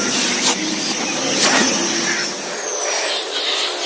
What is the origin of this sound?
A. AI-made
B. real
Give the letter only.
B